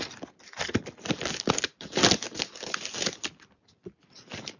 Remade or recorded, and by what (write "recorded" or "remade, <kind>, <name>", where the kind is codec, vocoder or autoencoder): recorded